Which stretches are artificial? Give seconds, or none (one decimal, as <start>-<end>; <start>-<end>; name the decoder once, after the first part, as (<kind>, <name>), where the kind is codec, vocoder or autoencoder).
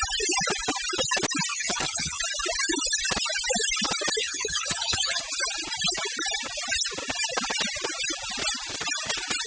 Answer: 1.5-2.2 (vocoder, HiFi-GAN); 4.2-5.2